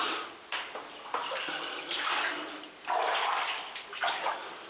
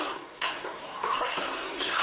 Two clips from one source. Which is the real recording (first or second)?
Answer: first